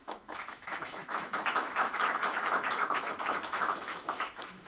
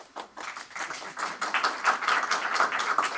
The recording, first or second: second